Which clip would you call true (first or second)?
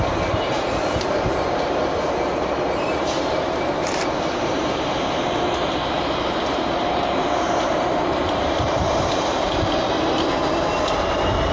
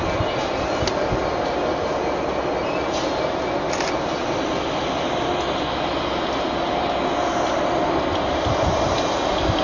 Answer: second